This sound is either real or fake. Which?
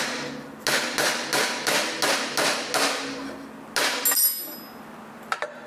real